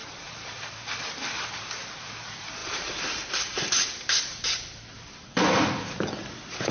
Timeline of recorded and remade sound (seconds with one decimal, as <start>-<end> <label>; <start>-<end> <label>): 0.0-1.6 remade; 1.6-2.6 recorded; 2.6-5.7 remade; 5.7-6.7 recorded